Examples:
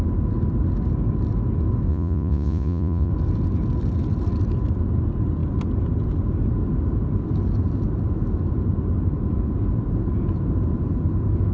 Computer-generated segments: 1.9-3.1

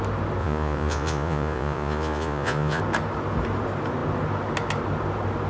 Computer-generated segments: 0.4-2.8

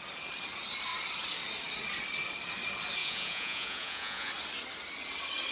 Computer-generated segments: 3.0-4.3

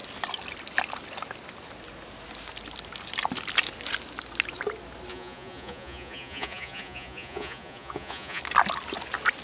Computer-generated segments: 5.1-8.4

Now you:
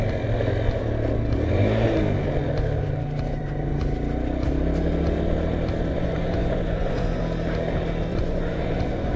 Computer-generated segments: 5.9-7.2; 8.1-9.2